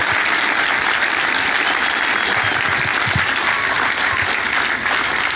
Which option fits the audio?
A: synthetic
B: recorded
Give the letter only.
B